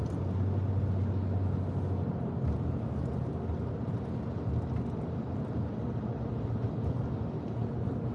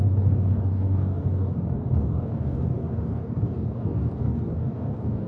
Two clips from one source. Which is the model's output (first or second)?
second